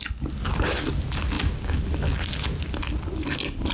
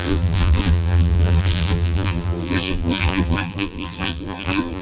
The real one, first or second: first